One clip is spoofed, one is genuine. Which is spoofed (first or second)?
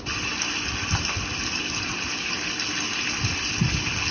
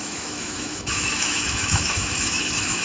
second